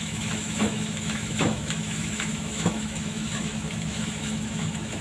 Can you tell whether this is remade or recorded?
remade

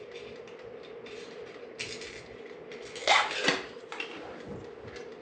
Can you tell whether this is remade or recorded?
recorded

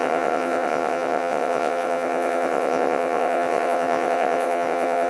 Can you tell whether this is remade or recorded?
remade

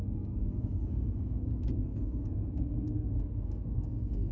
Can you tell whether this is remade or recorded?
remade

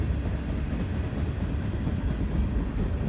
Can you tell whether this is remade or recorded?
recorded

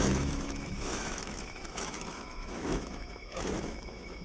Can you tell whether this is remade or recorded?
remade